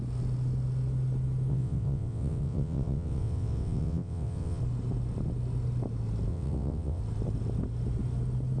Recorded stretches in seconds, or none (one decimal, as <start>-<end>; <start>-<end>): 0.0-1.5; 4.6-6.3; 7.0-8.6